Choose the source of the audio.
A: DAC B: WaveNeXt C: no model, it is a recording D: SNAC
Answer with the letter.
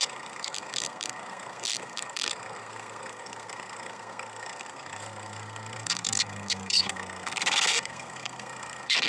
D